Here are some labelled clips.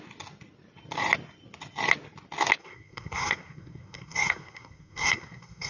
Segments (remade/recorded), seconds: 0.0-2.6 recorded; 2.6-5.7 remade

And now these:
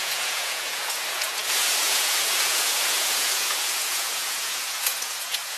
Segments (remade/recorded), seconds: 0.0-5.6 remade

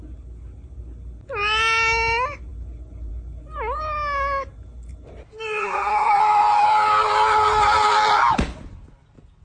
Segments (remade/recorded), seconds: 0.0-5.6 recorded; 5.6-6.2 remade; 6.2-9.4 recorded